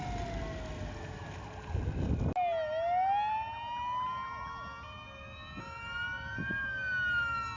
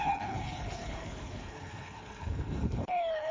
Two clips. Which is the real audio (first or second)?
first